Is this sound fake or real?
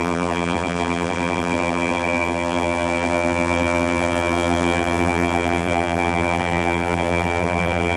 fake